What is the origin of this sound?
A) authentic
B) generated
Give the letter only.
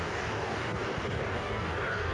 B